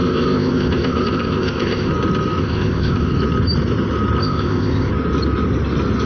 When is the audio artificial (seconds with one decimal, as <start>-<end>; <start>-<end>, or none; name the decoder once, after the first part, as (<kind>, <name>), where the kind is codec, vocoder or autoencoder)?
0.0-1.9 (codec, ZipCodec); 2.4-3.1; 4.2-4.9